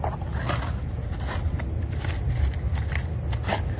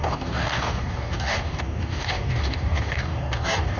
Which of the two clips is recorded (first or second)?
first